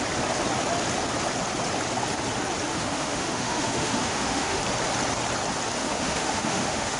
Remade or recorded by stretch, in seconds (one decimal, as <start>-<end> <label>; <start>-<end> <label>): 0.0-2.7 recorded; 2.7-4.6 remade; 4.6-5.8 recorded; 5.8-7.0 remade